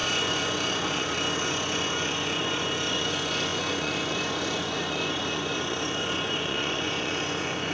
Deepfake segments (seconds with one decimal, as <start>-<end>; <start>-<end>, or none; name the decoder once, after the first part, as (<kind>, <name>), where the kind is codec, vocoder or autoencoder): 0.0-7.7 (vocoder, Vocos)